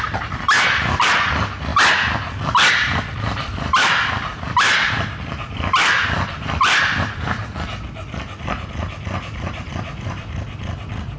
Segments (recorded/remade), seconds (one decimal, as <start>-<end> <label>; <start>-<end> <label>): 0.0-1.7 remade; 1.7-2.7 recorded; 2.7-11.2 remade